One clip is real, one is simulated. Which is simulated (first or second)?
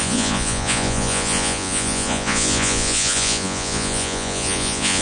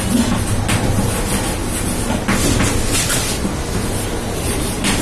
first